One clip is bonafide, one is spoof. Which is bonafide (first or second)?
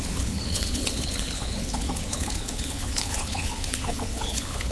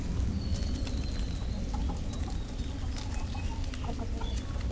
second